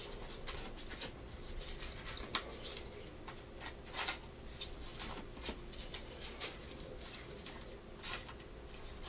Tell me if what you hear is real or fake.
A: real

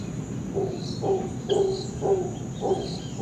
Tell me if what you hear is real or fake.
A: real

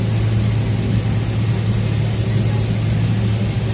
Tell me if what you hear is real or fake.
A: real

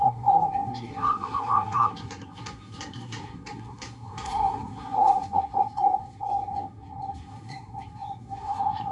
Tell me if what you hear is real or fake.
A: fake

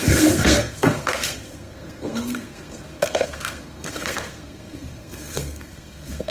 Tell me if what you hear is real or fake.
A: fake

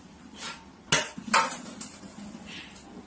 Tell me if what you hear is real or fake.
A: real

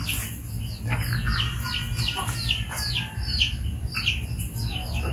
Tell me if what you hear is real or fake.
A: real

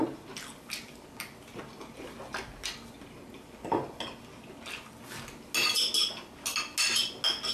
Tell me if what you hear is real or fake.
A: real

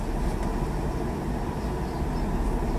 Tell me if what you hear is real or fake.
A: real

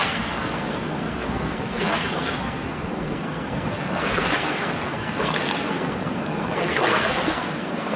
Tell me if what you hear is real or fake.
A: fake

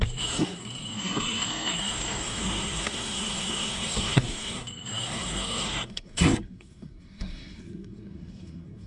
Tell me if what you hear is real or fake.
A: fake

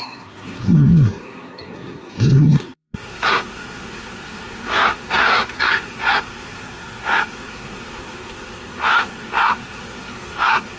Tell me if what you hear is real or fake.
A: fake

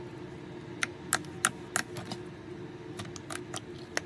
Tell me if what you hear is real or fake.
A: real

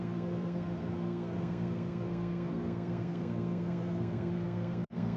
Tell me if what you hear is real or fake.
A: fake